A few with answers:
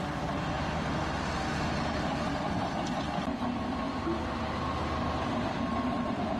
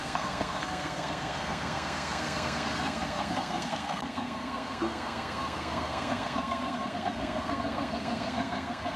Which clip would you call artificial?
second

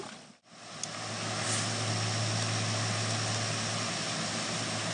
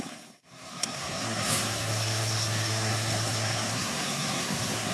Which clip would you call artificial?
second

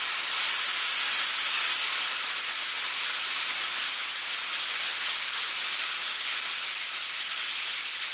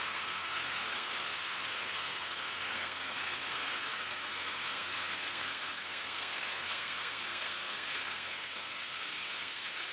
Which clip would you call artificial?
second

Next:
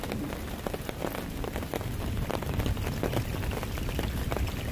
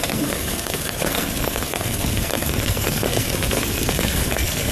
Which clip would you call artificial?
second